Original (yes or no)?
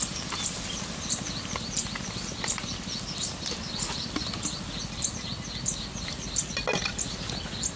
yes